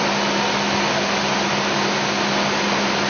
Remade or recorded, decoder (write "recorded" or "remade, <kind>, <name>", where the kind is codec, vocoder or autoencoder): recorded